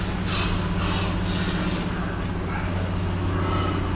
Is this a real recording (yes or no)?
yes